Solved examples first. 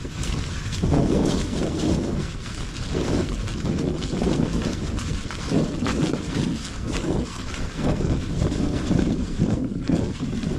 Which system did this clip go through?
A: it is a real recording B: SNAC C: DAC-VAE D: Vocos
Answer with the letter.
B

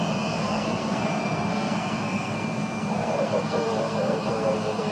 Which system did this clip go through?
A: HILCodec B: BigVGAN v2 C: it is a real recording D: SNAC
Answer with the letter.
D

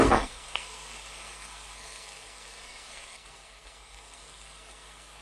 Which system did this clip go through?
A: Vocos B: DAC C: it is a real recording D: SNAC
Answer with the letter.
D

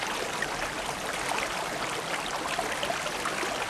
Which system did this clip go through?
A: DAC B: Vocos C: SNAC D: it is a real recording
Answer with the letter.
D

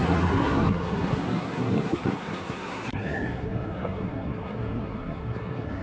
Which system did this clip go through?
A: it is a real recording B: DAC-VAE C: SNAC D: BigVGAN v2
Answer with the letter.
C